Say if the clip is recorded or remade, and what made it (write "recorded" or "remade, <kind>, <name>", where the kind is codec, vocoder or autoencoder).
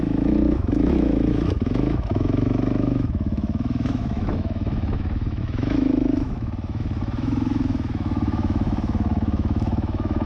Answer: remade, autoencoder, DAC-VAE